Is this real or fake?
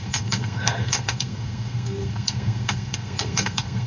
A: fake